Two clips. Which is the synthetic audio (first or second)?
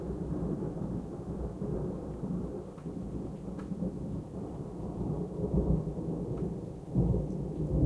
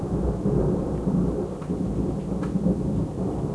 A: first